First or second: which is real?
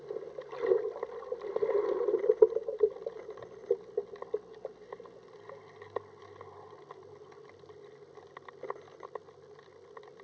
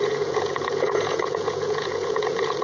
first